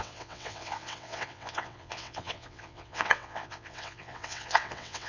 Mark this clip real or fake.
fake